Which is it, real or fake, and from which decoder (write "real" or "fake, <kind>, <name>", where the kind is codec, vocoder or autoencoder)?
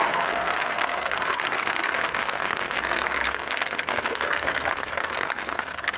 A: fake, codec, SNAC